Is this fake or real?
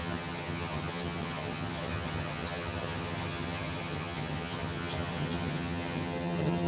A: fake